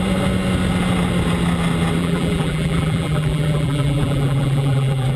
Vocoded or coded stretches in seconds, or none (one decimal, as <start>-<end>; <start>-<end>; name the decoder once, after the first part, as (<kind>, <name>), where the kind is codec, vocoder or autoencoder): 2.0-5.2 (vocoder, BigVGAN v2)

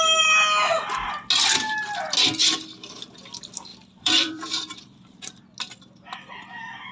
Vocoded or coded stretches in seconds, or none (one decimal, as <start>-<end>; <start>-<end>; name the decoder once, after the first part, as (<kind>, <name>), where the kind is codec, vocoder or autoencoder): 3.7-5.4 (vocoder, BigVGAN v2)

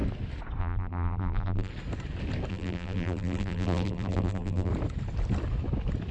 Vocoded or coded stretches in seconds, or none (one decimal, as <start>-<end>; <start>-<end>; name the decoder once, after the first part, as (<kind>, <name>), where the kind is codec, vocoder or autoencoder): 0.6-1.7 (vocoder, BigVGAN v2); 2.5-4.7

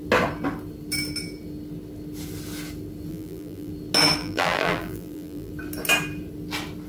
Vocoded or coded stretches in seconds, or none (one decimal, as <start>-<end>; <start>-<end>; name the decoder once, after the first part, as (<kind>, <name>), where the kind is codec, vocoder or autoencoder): 3.1-3.7 (vocoder, BigVGAN v2); 4.2-5.5

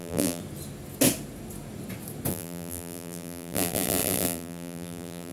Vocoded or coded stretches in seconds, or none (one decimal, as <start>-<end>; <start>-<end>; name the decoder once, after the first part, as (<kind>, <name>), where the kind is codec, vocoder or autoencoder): 0.0-0.4 (vocoder, BigVGAN v2); 2.3-5.3

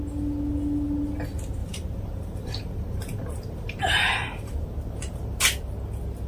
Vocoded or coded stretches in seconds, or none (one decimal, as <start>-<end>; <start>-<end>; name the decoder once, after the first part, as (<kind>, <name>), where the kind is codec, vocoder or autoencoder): 1.6-5.4 (vocoder, BigVGAN v2)

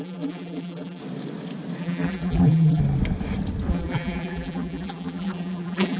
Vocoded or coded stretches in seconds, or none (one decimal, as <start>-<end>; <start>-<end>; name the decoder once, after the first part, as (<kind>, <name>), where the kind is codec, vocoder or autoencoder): 0.0-1.0 (vocoder, BigVGAN v2); 1.8-2.8; 3.7-6.0